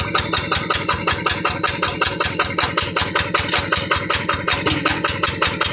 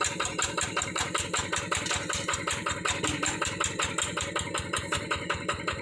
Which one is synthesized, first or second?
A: second